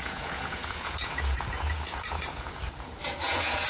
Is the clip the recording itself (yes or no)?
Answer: no